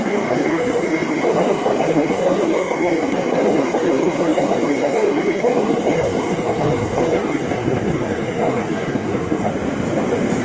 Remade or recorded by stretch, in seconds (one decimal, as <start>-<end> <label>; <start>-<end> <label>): 0.0-9.5 remade; 9.5-10.4 recorded